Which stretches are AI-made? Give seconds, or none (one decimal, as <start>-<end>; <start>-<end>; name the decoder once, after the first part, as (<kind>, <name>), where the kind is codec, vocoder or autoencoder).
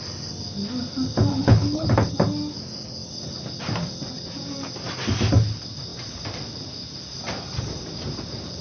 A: 1.3-2.1 (codec, HILCodec)